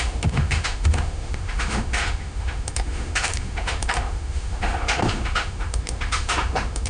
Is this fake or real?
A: fake